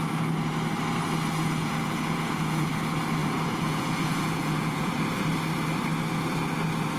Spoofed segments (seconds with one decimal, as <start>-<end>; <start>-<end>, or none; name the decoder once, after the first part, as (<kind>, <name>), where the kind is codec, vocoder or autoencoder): 1.4-2.7 (vocoder, Vocos); 3.2-4.9